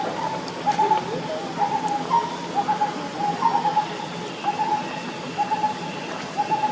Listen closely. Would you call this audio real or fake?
real